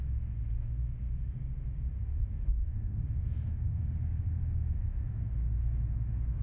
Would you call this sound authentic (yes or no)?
no